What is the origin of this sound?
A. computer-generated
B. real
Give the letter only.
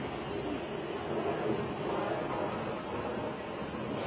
B